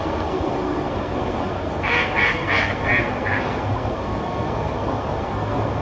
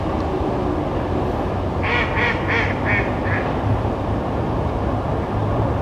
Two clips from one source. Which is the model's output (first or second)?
first